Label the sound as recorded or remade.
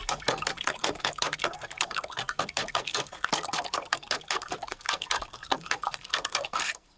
remade